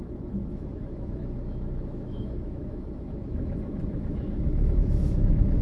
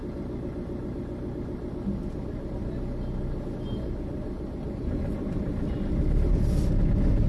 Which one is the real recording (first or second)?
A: second